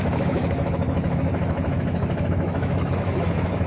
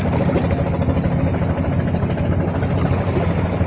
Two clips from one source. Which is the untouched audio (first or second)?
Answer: second